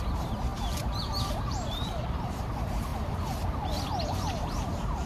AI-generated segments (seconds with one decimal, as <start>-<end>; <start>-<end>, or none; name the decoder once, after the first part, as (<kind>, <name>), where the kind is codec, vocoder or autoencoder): 0.0-2.9 (vocoder, BigVGAN v2); 3.8-5.1